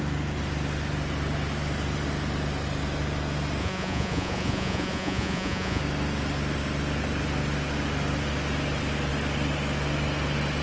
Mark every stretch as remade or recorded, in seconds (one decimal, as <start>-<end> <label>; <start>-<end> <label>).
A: 0.0-3.6 recorded; 3.6-5.8 remade; 5.8-10.6 recorded